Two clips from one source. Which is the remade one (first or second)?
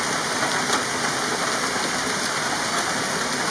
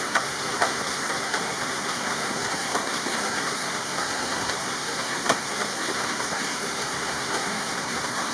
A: second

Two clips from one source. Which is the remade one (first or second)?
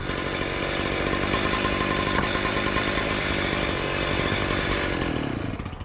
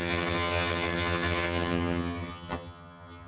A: second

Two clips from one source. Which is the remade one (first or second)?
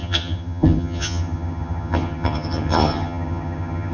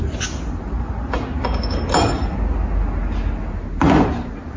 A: first